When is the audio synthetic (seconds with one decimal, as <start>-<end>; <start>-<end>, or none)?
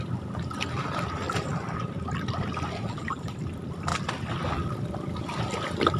1.5-2.4